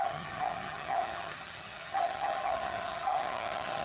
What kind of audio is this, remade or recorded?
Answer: remade